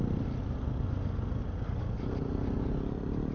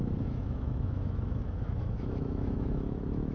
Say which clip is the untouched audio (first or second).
first